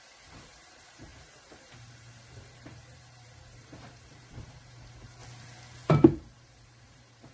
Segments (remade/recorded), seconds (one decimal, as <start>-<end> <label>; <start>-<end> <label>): 0.0-5.2 remade; 5.2-5.9 recorded; 5.9-7.3 remade

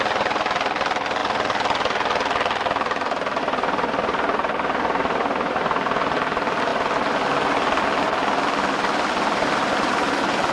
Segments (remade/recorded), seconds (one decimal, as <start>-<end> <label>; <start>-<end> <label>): 0.0-1.2 remade; 1.2-3.4 recorded; 3.4-6.7 remade; 6.7-9.1 recorded; 9.1-10.5 remade

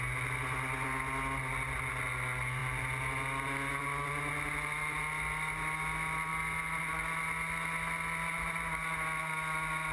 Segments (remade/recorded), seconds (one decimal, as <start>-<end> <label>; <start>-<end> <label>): 0.0-9.9 recorded

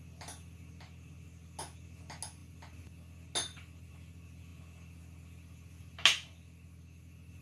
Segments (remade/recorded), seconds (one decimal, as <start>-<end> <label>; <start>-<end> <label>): 0.0-7.4 recorded

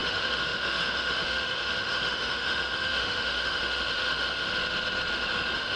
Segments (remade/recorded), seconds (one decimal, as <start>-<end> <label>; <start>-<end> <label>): 0.0-4.5 remade; 4.5-5.1 recorded; 5.1-5.8 remade

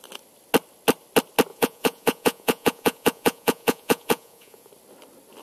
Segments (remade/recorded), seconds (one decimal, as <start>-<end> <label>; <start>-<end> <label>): 0.0-1.5 recorded; 1.5-4.7 remade; 4.7-5.4 recorded